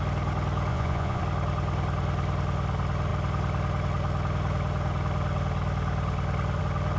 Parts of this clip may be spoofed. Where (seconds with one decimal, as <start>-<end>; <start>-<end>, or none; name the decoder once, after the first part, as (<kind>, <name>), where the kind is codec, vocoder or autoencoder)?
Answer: 0.7-1.2 (vocoder, Vocos)